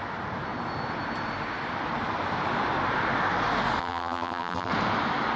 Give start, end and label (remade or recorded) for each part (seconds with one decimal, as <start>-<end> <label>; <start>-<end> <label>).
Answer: 0.0-3.8 recorded; 3.8-4.7 remade; 4.7-5.4 recorded